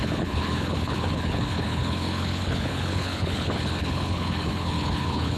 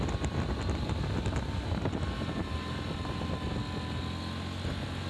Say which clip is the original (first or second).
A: second